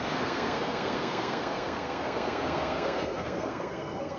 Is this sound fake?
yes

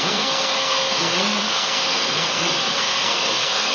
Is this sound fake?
yes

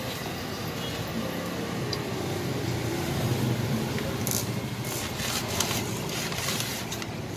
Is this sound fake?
no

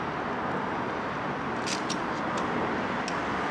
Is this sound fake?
no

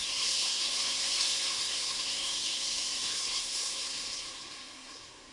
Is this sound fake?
yes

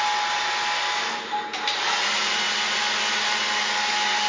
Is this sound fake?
no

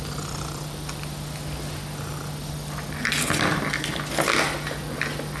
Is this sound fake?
no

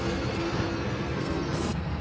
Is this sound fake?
yes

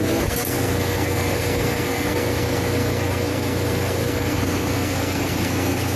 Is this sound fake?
yes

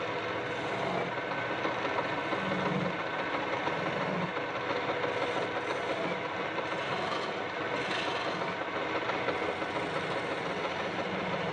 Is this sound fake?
no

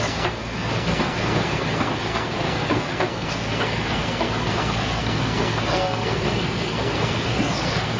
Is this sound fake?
yes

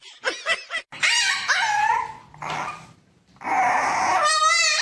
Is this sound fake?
no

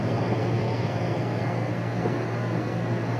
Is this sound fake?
yes